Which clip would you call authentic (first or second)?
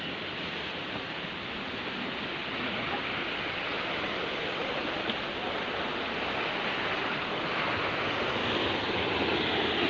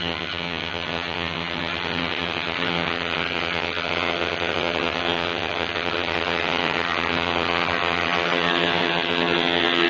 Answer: first